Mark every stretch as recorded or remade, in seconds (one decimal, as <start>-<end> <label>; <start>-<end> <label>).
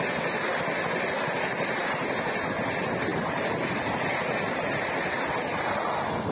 0.0-6.3 recorded